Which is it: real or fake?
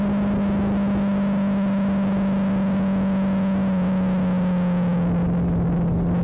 real